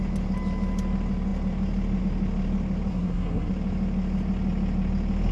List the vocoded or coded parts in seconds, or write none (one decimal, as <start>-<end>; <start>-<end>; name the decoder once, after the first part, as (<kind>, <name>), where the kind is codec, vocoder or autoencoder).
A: 2.9-3.5 (codec, SNAC)